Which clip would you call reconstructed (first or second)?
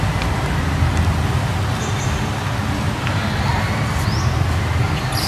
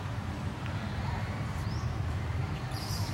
second